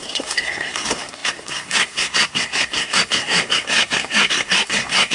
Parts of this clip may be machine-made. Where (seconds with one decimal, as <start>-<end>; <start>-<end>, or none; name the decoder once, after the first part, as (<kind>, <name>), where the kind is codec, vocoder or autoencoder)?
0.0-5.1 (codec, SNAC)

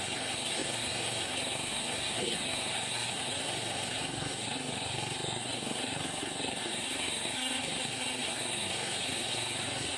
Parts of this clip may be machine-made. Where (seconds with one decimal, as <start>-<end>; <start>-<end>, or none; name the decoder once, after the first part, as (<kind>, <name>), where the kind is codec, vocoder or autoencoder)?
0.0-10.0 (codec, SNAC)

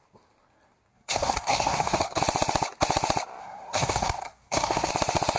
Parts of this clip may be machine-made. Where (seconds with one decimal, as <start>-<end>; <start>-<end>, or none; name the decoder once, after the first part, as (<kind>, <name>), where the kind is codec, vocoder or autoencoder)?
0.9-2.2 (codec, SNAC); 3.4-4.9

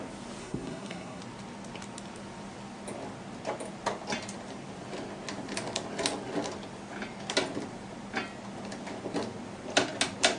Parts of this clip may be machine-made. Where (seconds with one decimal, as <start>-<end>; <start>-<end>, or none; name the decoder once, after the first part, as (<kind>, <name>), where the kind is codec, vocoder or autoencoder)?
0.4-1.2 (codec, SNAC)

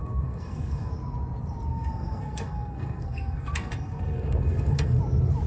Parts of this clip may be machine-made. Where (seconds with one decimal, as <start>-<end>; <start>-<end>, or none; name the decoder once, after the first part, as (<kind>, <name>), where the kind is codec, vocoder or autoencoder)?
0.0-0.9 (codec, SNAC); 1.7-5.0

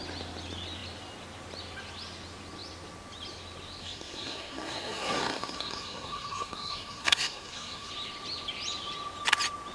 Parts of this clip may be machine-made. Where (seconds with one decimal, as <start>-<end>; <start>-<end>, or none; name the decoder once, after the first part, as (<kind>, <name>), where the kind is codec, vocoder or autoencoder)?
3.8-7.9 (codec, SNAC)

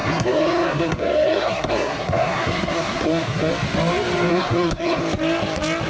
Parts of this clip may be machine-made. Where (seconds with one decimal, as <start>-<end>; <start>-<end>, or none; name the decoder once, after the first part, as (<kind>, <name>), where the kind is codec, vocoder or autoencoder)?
0.0-3.5 (codec, SNAC); 4.3-5.0

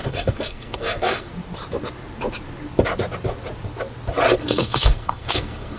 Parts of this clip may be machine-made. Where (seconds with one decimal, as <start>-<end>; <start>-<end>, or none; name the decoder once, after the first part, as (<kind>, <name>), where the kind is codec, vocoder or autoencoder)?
0.0-1.3 (codec, SNAC); 4.3-5.8